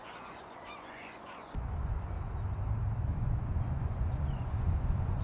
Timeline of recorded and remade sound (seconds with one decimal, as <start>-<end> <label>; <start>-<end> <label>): 0.0-1.9 remade; 1.9-3.1 recorded; 3.1-5.2 remade